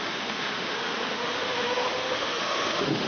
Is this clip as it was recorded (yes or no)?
no